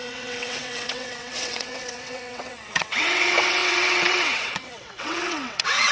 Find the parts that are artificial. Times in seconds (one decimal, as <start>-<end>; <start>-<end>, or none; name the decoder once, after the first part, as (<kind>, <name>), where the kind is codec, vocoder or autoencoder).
0.0-5.9 (vocoder, WaveNeXt)